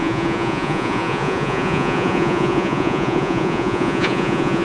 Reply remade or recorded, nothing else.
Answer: remade